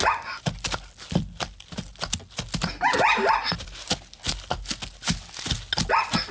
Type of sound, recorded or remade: recorded